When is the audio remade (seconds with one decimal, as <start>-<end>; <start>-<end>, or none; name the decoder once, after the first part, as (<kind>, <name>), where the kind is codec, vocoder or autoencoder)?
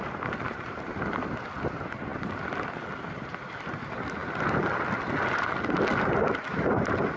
none